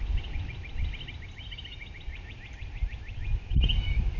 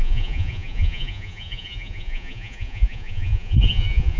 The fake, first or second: second